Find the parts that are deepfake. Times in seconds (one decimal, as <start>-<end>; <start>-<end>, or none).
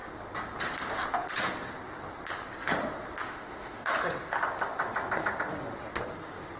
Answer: 3.2-3.9